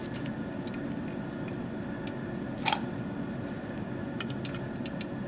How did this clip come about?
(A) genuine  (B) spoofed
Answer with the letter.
A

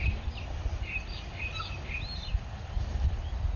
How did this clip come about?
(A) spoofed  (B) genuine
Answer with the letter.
B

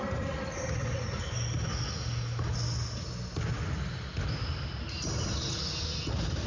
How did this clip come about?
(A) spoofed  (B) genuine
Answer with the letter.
B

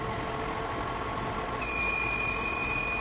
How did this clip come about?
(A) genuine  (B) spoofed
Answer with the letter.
A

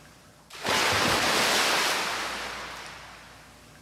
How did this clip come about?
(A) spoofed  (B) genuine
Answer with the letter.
B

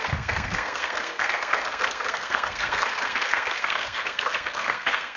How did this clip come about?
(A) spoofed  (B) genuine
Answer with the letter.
A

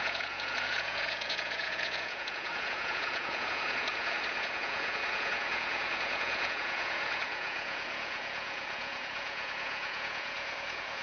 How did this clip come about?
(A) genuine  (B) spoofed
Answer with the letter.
B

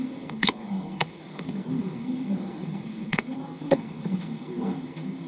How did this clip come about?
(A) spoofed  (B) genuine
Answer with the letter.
A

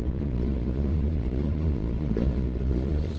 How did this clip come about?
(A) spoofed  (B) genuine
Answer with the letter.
A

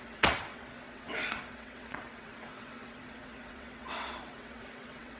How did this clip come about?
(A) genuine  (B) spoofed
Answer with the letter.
B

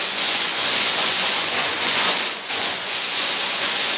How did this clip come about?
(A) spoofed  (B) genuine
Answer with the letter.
A